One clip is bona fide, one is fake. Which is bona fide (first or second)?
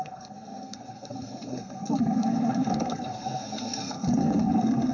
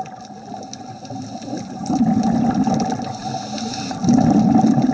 second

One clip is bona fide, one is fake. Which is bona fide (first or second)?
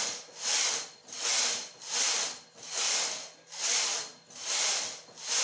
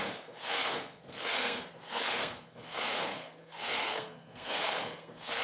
first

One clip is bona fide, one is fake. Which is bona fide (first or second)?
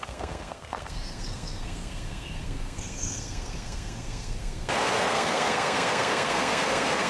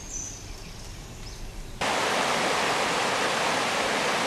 second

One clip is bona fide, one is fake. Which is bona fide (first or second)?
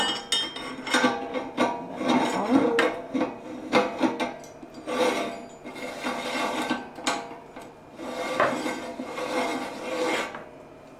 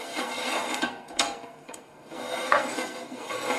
first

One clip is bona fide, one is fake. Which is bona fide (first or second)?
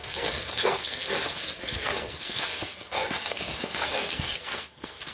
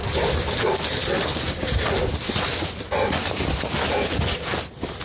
second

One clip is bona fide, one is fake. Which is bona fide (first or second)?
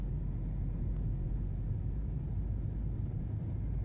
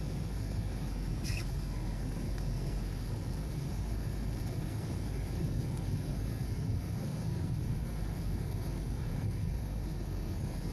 first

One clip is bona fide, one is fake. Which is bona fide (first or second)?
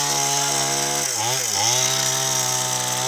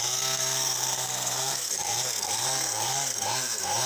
first